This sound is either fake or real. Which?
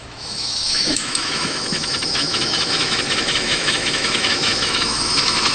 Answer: fake